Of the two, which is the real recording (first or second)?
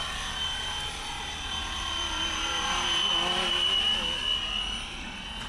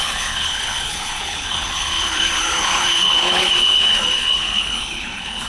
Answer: first